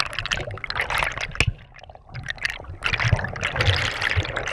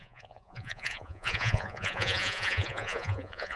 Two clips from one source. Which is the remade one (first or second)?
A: second